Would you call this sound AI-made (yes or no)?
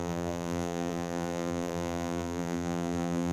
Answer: yes